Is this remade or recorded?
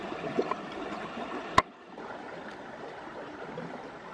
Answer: remade